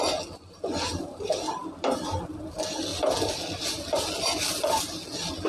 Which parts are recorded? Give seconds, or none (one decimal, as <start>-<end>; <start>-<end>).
0.0-2.9; 3.4-5.5